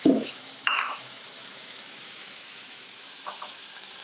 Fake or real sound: fake